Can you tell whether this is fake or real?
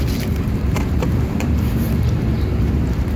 fake